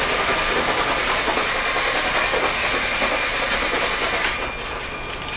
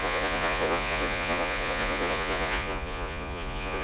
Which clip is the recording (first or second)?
first